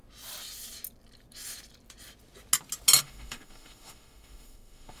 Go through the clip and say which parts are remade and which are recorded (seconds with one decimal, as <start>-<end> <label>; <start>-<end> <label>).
0.0-3.0 recorded; 3.0-5.0 remade